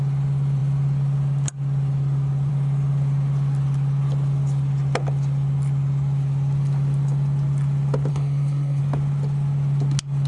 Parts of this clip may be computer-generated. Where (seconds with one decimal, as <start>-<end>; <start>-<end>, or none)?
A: 8.1-8.8

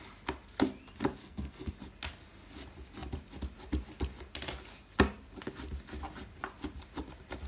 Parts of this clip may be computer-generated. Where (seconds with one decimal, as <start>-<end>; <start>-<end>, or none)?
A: 1.2-1.7

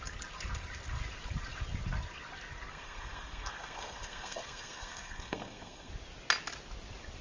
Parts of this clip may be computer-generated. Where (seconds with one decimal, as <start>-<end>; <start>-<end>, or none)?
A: 2.7-5.9